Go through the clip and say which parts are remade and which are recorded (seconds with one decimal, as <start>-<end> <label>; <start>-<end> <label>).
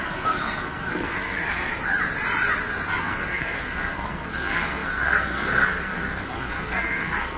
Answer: 0.0-1.7 remade; 1.7-3.0 recorded; 3.0-7.4 remade